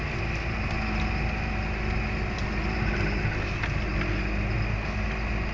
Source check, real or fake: real